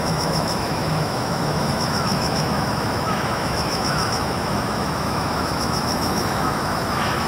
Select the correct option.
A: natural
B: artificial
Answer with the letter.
B